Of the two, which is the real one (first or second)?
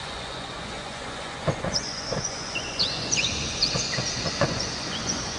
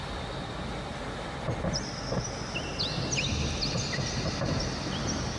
second